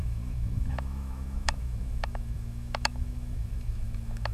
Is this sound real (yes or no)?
no